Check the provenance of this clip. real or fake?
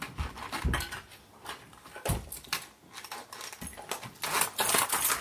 real